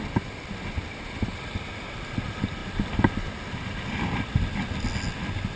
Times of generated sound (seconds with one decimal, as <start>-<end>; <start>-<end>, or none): none